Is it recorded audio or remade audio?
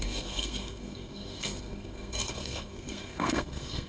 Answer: remade